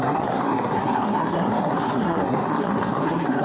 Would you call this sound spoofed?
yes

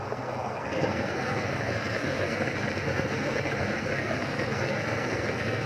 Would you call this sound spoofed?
yes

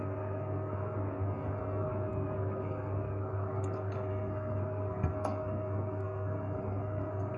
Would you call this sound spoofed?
yes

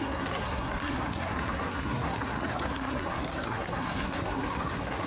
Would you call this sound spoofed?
yes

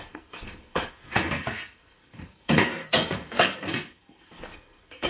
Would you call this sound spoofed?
yes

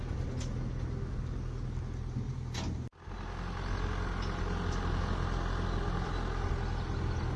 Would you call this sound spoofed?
no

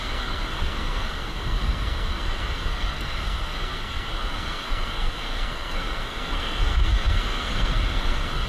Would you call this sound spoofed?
yes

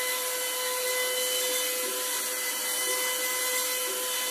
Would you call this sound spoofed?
no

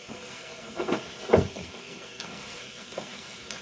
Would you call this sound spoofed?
yes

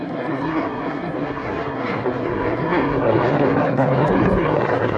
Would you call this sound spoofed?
yes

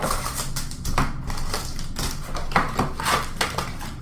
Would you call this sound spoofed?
no